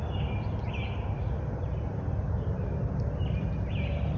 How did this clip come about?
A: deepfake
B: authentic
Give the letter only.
B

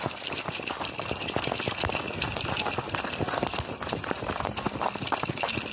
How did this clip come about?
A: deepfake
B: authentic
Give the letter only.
B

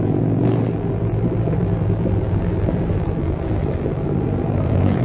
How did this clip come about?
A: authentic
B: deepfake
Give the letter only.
B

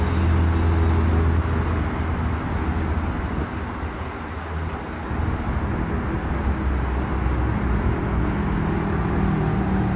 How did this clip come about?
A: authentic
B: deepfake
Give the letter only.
A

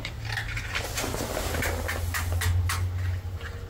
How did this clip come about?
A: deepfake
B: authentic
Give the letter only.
B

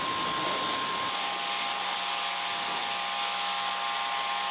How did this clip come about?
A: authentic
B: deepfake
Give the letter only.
A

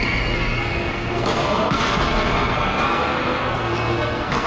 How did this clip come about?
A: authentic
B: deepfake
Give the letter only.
B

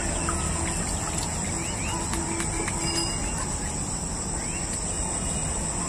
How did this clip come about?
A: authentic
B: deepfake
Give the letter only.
A